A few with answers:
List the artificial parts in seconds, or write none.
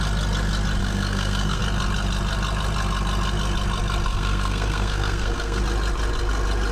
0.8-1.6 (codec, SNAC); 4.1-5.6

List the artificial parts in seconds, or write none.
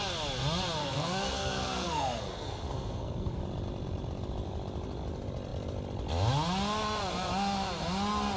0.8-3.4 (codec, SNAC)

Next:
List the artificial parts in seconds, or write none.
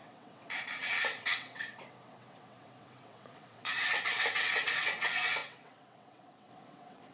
0.0-7.1 (vocoder, WaveNeXt)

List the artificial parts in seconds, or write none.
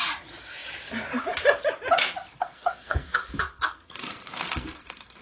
2.3-5.2 (codec, SNAC)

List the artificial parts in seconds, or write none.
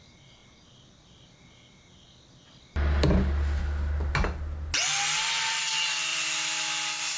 6.1-7.2 (vocoder, BigVGAN v2)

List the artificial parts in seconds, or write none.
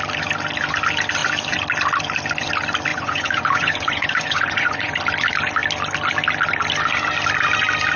2.9-5.0 (vocoder, Vocos)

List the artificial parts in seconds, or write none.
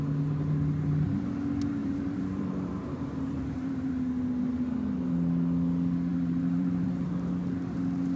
1.8-3.9 (vocoder, BigVGAN v2); 6.1-6.9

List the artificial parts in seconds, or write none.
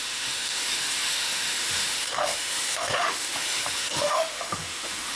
0.0-5.2 (autoencoder, DAC-VAE)